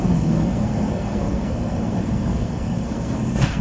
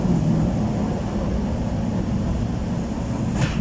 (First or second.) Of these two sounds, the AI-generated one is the first